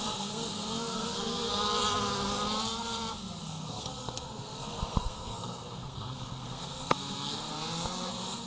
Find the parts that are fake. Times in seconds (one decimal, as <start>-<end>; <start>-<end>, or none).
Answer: 0.0-1.5; 3.4-7.5; 8.1-8.5